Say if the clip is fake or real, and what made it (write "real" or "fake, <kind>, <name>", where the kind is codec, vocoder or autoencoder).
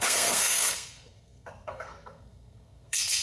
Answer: fake, codec, SNAC